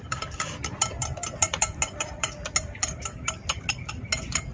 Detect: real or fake fake